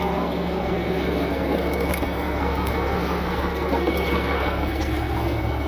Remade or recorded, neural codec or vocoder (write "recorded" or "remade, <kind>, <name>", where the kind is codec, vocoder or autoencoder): remade, codec, SNAC